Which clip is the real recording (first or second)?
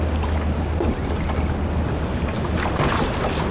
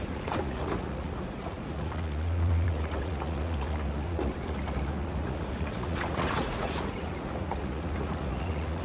first